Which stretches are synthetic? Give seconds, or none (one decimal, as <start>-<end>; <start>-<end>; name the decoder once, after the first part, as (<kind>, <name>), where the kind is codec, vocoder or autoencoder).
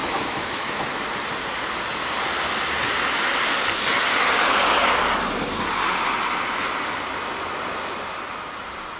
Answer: 0.0-0.9 (autoencoder, DAC-VAE)